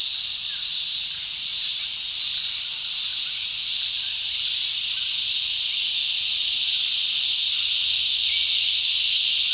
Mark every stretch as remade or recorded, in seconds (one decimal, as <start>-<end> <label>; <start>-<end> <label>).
0.0-0.4 recorded; 0.4-2.1 remade; 2.1-9.5 recorded